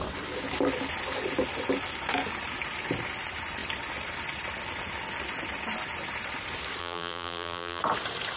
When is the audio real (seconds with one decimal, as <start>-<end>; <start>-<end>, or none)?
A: 0.0-6.8; 7.8-8.4